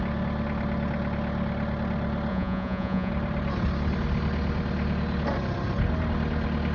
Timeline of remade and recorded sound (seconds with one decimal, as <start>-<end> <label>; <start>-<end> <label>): 0.0-2.3 recorded; 2.3-3.1 remade; 3.1-6.7 recorded

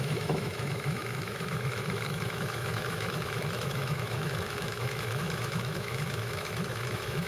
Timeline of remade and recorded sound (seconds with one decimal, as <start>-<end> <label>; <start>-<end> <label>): 0.0-7.3 remade

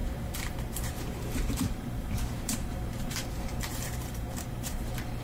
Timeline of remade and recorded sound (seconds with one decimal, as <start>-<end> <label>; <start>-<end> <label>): 0.0-5.2 remade

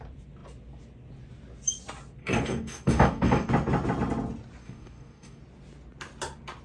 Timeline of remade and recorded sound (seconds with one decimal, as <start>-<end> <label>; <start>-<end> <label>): 0.0-2.2 recorded; 2.2-3.5 remade; 3.5-4.6 recorded; 4.6-5.4 remade; 5.4-6.6 recorded

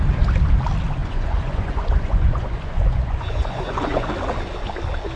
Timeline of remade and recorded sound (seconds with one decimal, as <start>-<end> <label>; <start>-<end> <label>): 0.0-1.0 recorded; 1.0-4.1 remade; 4.1-5.2 recorded

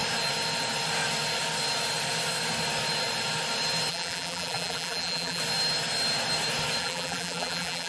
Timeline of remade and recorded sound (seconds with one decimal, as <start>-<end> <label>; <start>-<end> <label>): 0.0-3.9 recorded; 3.9-5.4 remade; 5.4-6.8 recorded; 6.8-7.9 remade

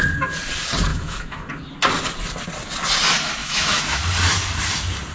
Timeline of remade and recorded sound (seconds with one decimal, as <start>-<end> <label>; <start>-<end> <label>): 0.0-0.9 recorded; 0.9-1.5 remade; 1.5-3.4 recorded; 3.4-4.0 remade; 4.0-5.1 recorded